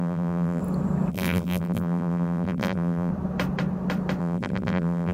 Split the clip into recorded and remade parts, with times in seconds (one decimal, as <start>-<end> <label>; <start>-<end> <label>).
0.0-0.6 remade; 0.6-1.1 recorded; 1.1-3.1 remade; 3.1-4.2 recorded; 4.2-5.1 remade